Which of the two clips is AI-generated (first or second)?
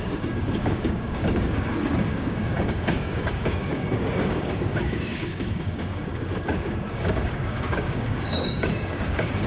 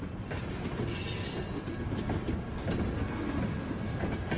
first